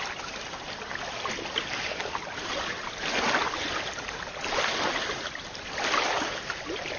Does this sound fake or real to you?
real